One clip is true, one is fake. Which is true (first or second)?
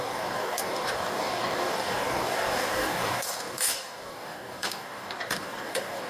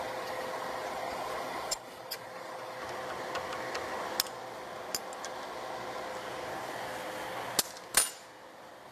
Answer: second